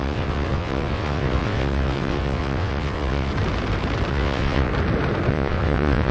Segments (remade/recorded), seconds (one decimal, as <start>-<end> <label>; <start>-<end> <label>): 0.0-3.3 remade; 3.3-4.1 recorded; 4.1-4.7 remade; 4.7-5.3 recorded; 5.3-6.1 remade